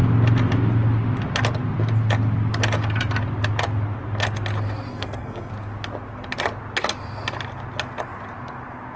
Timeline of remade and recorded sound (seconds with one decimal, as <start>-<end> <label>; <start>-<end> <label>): 0.0-4.9 recorded; 4.9-5.5 remade; 5.5-9.0 recorded